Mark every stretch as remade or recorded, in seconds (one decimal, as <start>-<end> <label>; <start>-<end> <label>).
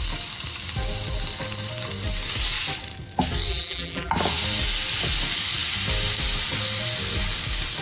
0.0-3.5 recorded; 3.5-4.1 remade; 4.1-7.8 recorded